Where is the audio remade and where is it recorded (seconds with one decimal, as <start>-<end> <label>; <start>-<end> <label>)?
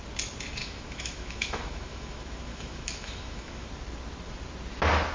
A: 0.0-0.6 recorded; 0.6-3.7 remade; 3.7-5.1 recorded